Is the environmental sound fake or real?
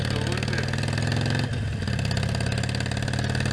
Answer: real